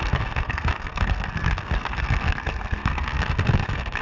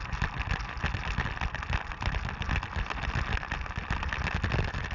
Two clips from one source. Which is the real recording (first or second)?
second